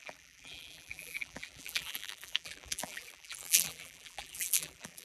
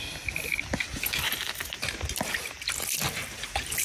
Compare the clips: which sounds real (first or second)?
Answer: second